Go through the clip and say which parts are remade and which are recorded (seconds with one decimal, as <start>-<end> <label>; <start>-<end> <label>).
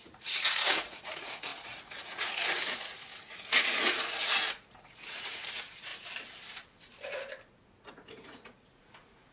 0.0-5.9 remade; 5.9-7.8 recorded; 7.8-9.3 remade